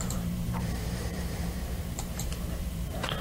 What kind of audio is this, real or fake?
fake